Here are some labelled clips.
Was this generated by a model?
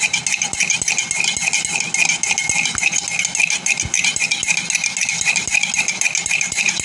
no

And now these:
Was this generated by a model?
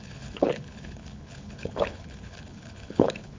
yes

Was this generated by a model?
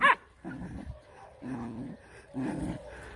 no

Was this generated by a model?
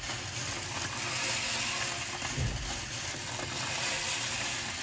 no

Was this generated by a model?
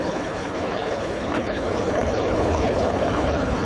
yes